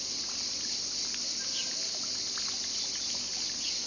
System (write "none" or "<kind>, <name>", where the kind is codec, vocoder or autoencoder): none